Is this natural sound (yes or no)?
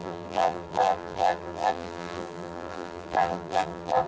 no